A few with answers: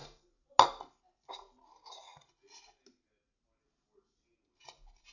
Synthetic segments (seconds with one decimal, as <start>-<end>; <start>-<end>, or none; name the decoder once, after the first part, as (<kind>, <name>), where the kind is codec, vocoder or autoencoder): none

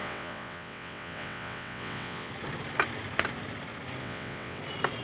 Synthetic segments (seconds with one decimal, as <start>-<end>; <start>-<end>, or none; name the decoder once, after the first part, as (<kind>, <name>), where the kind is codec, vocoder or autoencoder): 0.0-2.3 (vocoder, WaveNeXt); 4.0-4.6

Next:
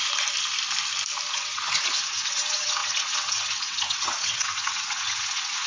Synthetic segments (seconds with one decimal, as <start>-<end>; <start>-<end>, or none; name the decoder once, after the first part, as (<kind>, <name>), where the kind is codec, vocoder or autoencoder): 1.3-5.7 (vocoder, WaveNeXt)

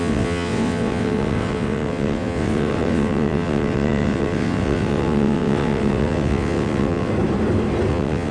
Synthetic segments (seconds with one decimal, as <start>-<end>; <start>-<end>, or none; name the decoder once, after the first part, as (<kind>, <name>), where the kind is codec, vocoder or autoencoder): 0.0-7.1 (vocoder, WaveNeXt); 7.9-8.3

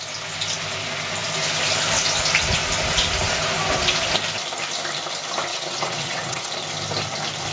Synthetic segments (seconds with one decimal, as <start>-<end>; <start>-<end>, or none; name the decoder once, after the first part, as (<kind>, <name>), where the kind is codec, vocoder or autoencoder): 5.5-6.5 (vocoder, WaveNeXt)